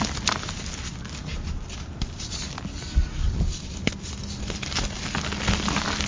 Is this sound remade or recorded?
recorded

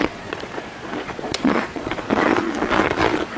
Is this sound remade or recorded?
remade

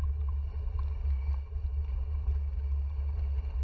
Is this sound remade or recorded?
recorded